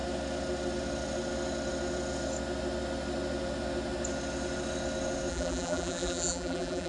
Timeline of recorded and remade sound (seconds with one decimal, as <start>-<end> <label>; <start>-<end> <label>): 0.0-5.3 recorded; 5.3-6.9 remade